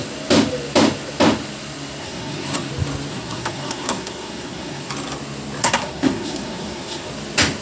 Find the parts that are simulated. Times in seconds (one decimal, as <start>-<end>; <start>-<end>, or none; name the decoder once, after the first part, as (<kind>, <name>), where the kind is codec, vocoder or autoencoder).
2.0-2.7 (codec, SNAC); 3.1-4.9; 5.6-7.1